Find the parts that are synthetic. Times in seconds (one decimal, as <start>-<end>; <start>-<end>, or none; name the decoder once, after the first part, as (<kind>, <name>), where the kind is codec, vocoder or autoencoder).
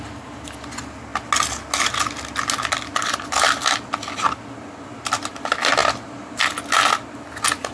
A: none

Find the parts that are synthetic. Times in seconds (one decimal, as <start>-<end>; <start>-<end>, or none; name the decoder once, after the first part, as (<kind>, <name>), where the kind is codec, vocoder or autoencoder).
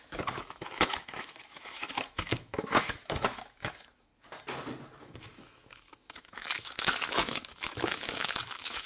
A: 0.0-4.1 (autoencoder, DAC-VAE); 5.0-8.9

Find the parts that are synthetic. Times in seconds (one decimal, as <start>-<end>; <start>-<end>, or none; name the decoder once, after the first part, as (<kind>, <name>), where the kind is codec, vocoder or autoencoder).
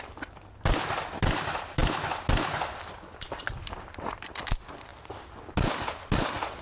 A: none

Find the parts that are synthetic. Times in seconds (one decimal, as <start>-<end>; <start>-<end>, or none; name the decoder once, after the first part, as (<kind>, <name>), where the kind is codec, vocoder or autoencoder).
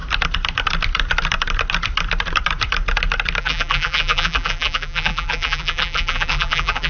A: 3.4-6.9 (vocoder, BigVGAN v2)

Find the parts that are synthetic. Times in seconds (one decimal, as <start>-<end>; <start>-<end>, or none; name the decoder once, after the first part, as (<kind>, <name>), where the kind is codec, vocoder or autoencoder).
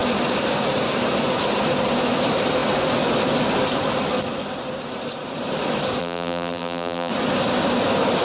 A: 6.0-7.1 (vocoder, BigVGAN v2)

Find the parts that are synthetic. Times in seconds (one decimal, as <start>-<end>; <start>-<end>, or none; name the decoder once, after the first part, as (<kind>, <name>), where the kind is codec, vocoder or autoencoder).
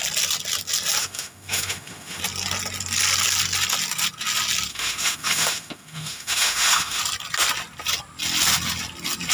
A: 1.0-2.2 (autoencoder, DAC-VAE); 4.7-7.0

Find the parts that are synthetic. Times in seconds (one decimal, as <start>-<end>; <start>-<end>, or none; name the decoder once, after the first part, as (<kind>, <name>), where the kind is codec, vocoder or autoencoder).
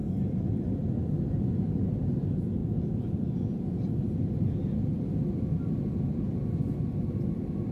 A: 0.0-1.3 (vocoder, BigVGAN v2); 2.6-4.3; 4.9-5.7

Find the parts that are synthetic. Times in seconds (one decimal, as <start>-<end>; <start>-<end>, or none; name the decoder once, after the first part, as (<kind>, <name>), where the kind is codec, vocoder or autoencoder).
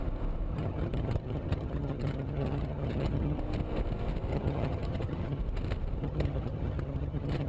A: 0.5-3.4 (vocoder, HiFi-GAN); 4.3-5.4; 6.0-7.5